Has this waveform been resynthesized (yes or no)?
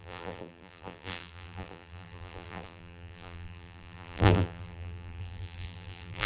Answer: yes